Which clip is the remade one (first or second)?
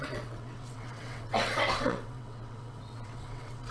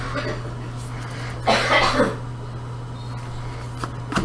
first